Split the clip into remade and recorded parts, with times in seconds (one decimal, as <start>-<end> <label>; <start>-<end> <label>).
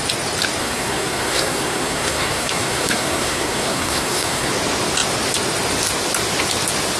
0.0-0.6 recorded; 0.6-4.5 remade; 4.5-7.0 recorded